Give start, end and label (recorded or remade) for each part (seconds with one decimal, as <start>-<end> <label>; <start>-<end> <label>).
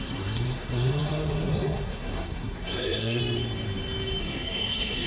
0.0-3.2 remade; 3.2-4.2 recorded; 4.2-5.1 remade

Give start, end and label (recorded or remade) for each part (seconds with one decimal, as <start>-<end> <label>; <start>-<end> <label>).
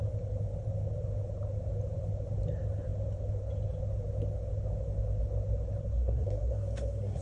0.0-5.8 recorded; 5.8-7.2 remade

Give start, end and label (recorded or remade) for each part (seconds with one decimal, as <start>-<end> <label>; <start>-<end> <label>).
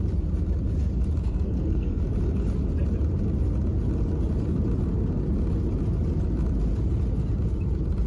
0.0-1.2 recorded; 1.2-2.0 remade; 2.0-8.1 recorded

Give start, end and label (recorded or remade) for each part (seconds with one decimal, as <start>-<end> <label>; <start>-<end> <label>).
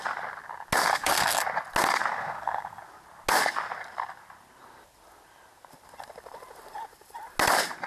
0.0-0.9 recorded; 0.9-1.4 remade; 1.4-2.2 recorded; 2.2-2.8 remade; 2.8-7.9 recorded